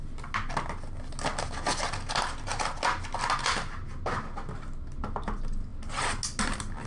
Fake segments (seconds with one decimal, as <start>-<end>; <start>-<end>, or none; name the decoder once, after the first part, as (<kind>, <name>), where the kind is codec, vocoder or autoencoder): none